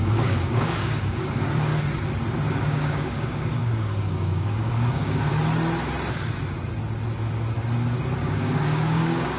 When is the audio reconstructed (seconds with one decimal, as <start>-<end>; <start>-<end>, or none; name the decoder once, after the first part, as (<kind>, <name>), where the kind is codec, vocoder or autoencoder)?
0.0-1.7 (codec, DAC); 2.5-5.3; 8.2-9.4